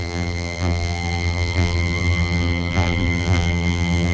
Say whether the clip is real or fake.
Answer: fake